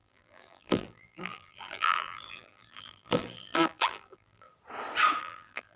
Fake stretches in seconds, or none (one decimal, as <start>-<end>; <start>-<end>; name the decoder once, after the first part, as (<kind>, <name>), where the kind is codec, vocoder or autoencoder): 0.0-4.5 (vocoder, BigVGAN v2); 5.2-5.8